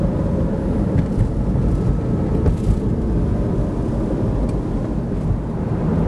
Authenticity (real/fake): real